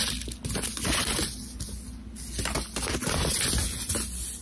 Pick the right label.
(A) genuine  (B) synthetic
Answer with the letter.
A